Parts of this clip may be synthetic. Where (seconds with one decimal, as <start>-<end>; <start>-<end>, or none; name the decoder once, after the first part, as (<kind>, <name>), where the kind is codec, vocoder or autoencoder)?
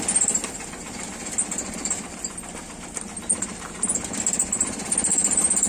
5.1-5.7 (vocoder, BigVGAN v2)